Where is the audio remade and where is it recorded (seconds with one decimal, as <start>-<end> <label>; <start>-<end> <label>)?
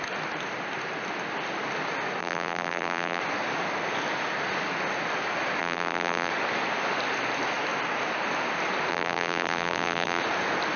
0.0-2.2 recorded; 2.2-3.2 remade; 3.2-5.6 recorded; 5.6-6.3 remade; 6.3-8.9 recorded; 8.9-10.2 remade; 10.2-10.8 recorded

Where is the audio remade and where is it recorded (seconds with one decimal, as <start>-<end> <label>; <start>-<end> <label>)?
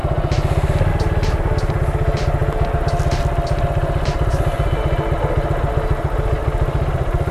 0.0-6.4 recorded; 6.4-7.3 remade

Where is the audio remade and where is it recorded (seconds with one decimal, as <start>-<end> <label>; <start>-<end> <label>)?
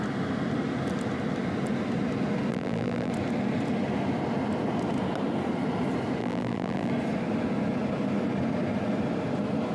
0.0-2.5 recorded; 2.5-3.1 remade; 3.1-6.2 recorded; 6.2-6.9 remade; 6.9-9.7 recorded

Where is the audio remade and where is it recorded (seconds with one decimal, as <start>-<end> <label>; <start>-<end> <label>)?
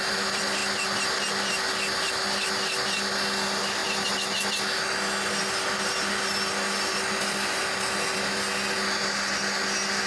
0.0-10.1 recorded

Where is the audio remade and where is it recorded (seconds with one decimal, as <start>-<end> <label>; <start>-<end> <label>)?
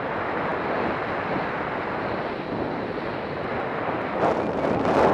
0.0-5.1 recorded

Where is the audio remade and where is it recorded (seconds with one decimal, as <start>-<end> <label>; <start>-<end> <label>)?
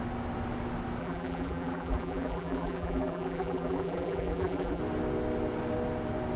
0.0-1.0 recorded; 1.0-4.8 remade; 4.8-6.4 recorded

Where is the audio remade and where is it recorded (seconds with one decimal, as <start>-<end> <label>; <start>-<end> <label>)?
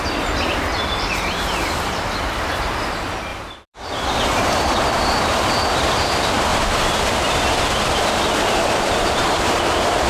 0.0-6.5 remade; 6.5-7.8 recorded; 7.8-10.1 remade